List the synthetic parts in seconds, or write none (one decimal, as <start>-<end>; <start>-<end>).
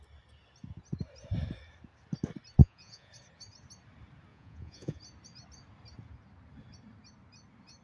2.6-3.1; 4.3-5.0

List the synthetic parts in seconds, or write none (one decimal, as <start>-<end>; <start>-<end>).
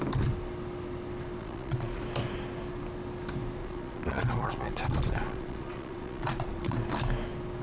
1.4-2.0; 3.6-6.9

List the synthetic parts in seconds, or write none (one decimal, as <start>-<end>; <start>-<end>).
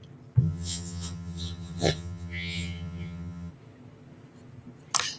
0.4-3.5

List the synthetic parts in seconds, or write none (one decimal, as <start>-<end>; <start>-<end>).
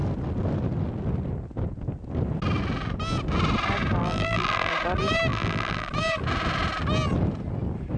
4.0-4.7; 5.3-5.9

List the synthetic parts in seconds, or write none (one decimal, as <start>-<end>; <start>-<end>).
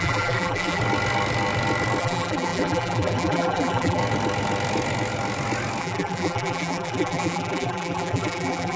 0.0-0.8; 2.0-4.0; 5.8-8.8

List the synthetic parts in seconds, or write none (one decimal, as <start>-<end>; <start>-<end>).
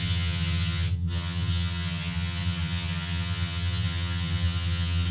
0.0-5.1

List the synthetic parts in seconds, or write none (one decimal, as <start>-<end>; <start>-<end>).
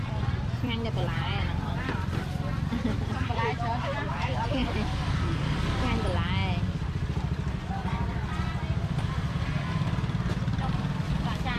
0.0-6.4; 9.3-11.6